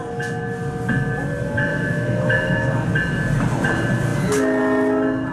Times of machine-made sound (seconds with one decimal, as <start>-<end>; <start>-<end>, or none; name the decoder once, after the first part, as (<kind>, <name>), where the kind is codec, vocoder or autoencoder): 1.7-2.9 (autoencoder, DAC-VAE)